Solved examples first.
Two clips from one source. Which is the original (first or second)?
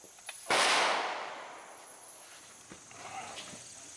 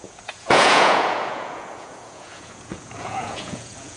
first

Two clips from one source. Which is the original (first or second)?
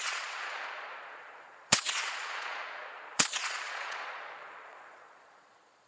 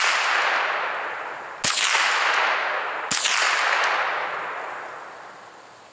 second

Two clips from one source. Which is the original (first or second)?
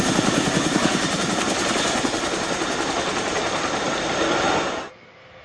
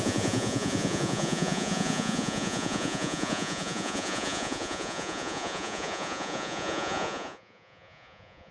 first